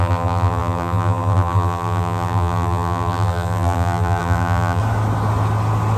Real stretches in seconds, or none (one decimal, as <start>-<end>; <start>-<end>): 4.8-6.0